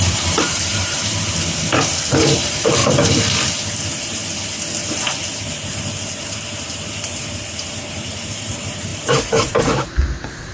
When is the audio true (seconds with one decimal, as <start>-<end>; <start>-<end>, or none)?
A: 1.0-2.1; 2.8-7.9